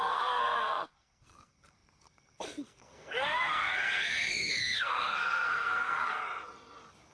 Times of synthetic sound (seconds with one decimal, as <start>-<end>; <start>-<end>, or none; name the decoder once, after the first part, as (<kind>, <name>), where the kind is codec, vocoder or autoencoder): 0.0-6.2 (codec, SNAC)